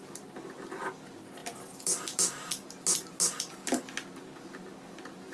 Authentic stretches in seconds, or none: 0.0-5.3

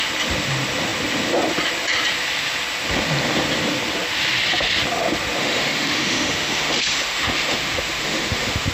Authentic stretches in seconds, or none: 0.0-5.4

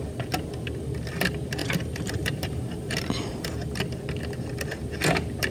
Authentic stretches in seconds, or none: 0.0-1.6; 3.8-5.5

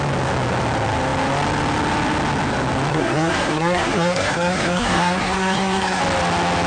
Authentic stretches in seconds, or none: 0.0-2.9; 6.0-6.7

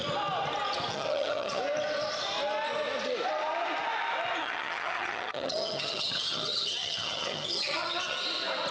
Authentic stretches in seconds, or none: 0.0-0.9; 1.6-4.4; 8.2-8.7

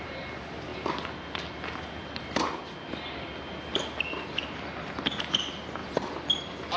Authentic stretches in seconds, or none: 0.0-6.8

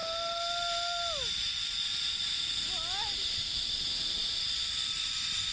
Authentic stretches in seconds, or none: 0.0-3.3; 4.2-5.0

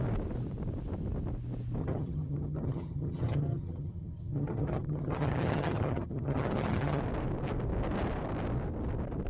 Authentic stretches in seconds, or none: 0.0-1.8; 7.0-9.3